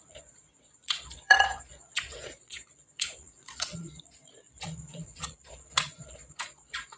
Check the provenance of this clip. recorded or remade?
remade